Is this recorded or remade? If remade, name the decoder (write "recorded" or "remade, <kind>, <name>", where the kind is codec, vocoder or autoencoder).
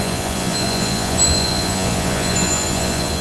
remade, vocoder, Vocos